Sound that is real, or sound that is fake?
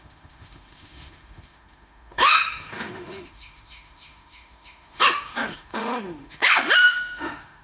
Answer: fake